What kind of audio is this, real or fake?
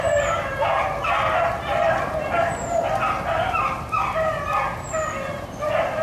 real